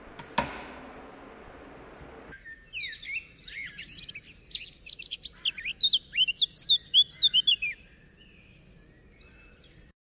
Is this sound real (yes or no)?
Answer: yes